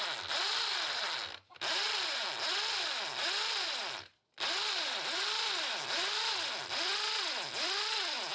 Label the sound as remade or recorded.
recorded